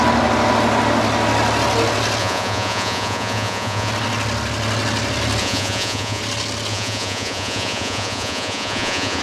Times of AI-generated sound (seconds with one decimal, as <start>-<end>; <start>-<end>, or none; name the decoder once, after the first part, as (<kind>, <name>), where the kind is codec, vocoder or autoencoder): 2.2-3.9 (vocoder, Vocos); 5.4-6.2; 6.7-9.2